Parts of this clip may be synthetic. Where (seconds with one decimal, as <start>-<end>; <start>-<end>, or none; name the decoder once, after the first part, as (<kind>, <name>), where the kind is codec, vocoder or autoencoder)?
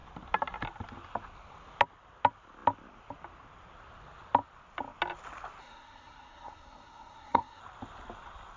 5.6-7.6 (codec, SNAC)